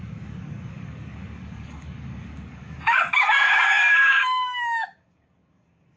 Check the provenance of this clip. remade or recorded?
remade